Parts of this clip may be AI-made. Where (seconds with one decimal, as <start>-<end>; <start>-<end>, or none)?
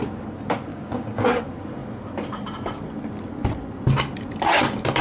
0.7-1.4